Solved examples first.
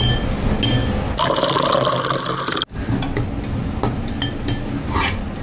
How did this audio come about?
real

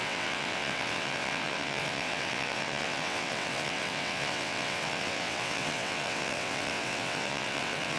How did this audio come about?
fake